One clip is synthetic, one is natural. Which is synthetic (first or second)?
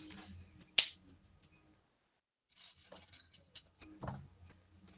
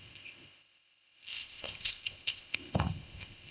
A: second